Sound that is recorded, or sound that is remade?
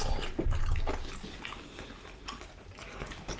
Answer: recorded